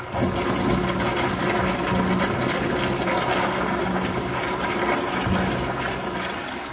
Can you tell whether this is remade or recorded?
recorded